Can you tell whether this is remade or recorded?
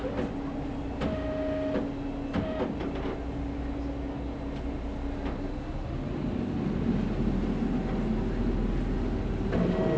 recorded